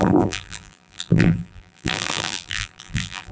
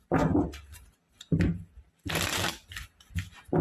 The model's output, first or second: first